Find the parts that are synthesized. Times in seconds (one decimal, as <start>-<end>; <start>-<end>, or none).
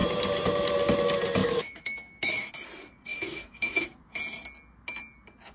1.4-2.5; 3.1-4.2